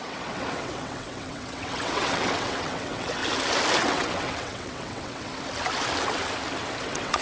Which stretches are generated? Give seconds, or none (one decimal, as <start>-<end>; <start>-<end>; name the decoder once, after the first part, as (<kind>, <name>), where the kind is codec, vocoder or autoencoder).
0.0-3.2 (vocoder, WaveNeXt); 3.8-5.3; 6.8-7.2